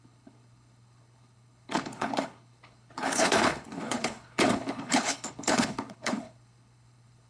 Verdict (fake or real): fake